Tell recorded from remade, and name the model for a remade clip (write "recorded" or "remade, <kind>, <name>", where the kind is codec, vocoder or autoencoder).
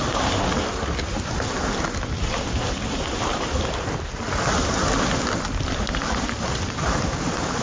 recorded